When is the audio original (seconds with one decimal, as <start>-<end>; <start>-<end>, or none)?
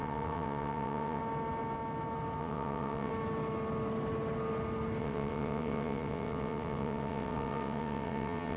1.2-2.4; 3.1-5.0